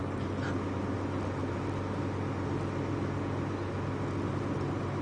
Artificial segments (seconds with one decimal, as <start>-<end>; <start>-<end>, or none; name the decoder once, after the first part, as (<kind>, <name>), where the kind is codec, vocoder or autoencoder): none